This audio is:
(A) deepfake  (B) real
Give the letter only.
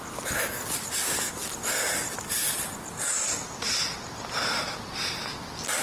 B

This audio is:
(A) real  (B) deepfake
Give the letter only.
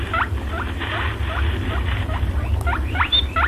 A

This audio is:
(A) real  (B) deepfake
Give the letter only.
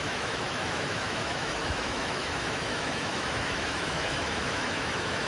B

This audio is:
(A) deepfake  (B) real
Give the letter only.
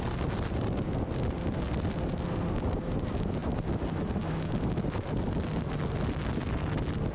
B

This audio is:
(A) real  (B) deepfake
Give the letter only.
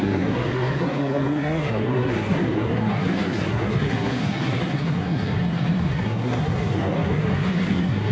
B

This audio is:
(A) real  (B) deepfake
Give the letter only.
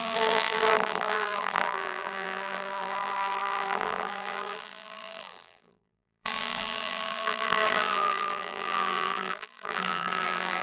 B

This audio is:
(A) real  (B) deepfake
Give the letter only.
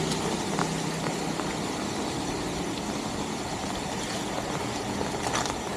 A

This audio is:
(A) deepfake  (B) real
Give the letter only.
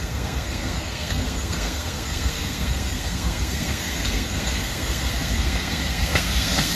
A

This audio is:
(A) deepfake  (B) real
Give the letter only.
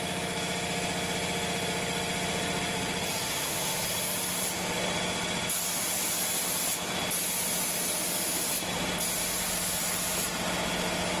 B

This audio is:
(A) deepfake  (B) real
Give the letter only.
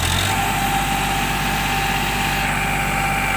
B